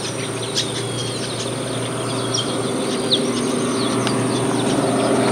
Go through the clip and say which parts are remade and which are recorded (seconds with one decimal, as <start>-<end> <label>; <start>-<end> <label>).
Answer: 0.0-5.3 recorded